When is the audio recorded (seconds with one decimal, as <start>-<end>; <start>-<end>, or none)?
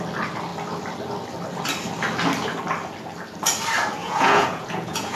0.0-4.0